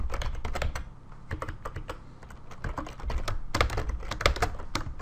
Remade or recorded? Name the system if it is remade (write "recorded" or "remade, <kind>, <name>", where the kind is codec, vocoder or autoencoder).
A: recorded